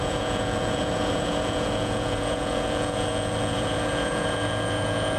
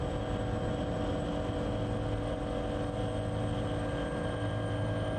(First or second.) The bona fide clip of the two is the second